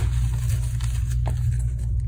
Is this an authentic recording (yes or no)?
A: yes